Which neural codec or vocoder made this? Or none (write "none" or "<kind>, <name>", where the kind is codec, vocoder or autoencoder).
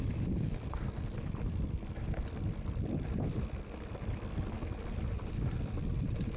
none